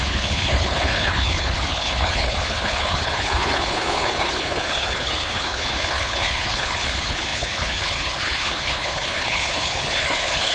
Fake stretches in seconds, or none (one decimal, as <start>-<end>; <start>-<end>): 0.0-10.5